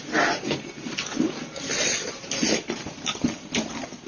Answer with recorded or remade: recorded